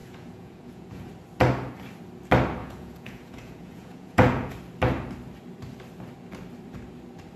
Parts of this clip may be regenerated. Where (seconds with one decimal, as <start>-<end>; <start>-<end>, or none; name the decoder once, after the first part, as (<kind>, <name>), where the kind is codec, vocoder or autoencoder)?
0.0-1.1 (vocoder, Vocos); 2.6-4.5